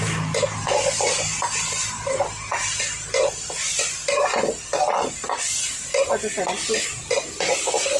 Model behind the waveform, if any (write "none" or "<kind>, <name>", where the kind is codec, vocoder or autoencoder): none